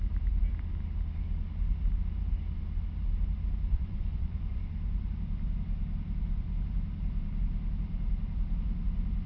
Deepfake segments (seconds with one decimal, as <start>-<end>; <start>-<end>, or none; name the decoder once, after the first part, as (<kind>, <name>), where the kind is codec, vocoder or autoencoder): 3.7-4.6 (vocoder, Vocos)